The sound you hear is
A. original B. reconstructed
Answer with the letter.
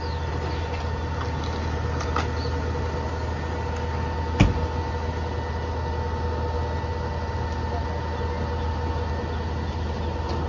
A